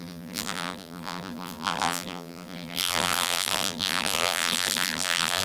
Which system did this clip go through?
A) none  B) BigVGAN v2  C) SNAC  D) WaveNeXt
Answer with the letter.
B